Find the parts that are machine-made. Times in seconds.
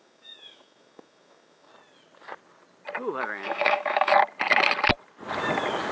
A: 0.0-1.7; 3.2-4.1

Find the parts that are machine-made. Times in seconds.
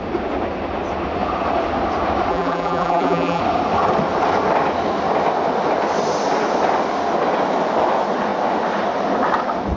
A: 2.3-3.4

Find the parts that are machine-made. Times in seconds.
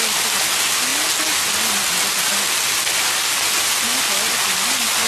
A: none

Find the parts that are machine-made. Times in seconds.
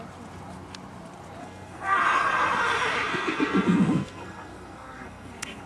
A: 1.4-2.0; 3.1-5.7